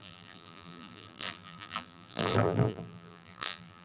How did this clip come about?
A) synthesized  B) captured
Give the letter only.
A